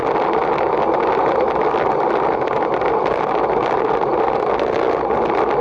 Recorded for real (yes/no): yes